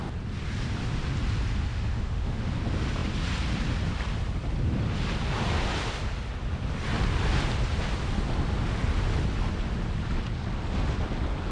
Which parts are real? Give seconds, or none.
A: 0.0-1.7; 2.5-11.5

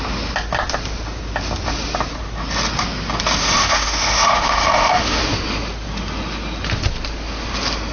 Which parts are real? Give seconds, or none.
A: 0.0-3.4; 5.2-7.9

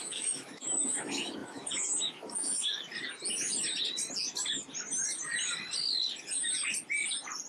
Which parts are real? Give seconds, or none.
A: 2.9-7.5

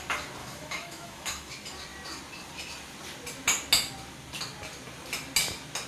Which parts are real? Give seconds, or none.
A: 0.0-0.4; 1.5-5.9

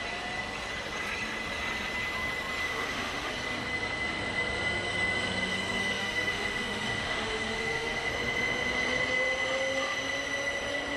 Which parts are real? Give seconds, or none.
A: 0.0-2.6; 3.3-6.0; 8.1-11.0

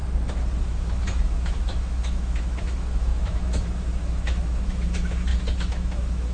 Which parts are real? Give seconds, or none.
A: 0.0-0.6

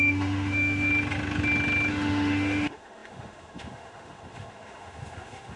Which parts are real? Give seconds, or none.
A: 0.9-1.9